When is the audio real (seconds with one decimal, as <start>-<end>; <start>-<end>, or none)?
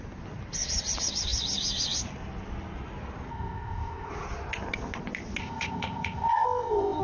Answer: 0.0-3.3; 4.1-5.4